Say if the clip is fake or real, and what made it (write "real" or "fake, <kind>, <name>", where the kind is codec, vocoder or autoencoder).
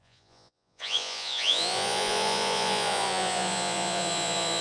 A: fake, vocoder, Vocos